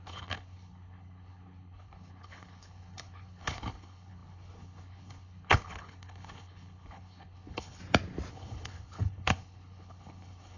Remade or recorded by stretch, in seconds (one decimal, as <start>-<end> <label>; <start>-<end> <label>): 0.0-7.8 remade; 7.8-8.3 recorded; 8.3-10.6 remade